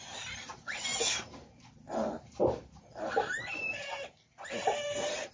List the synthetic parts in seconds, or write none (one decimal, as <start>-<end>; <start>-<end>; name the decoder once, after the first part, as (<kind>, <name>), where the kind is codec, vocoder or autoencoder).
0.0-5.3 (vocoder, BigVGAN v2)